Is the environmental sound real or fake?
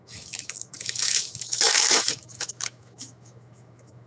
fake